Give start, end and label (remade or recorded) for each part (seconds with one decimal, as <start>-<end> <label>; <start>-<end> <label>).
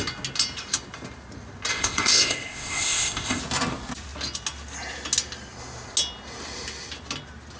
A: 0.0-1.7 recorded; 1.7-3.4 remade; 3.4-7.6 recorded